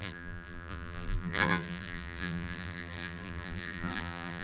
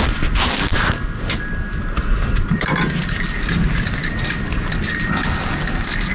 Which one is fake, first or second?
first